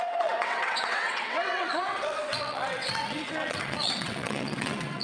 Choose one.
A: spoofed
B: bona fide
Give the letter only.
A